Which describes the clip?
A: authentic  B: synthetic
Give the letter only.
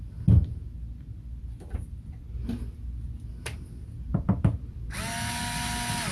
A